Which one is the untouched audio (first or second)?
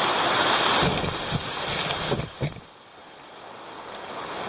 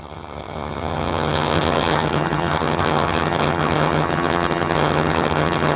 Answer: first